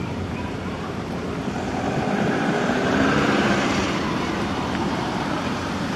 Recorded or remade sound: remade